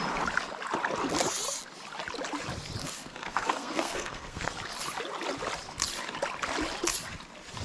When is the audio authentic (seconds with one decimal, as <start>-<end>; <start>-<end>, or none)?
0.0-2.8; 4.5-7.6